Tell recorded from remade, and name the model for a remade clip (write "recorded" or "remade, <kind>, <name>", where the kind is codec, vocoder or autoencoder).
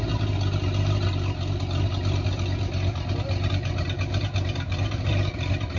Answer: recorded